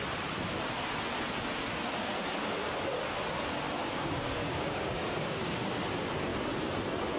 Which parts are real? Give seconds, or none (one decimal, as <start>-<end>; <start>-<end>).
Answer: 0.0-3.8; 5.7-7.2

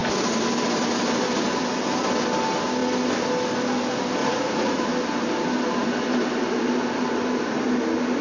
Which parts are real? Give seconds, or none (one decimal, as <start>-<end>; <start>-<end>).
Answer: 0.0-4.2; 4.8-8.2